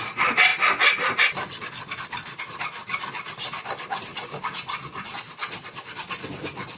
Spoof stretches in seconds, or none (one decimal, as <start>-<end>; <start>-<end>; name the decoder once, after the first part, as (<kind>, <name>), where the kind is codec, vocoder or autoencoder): none